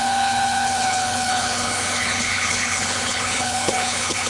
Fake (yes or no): yes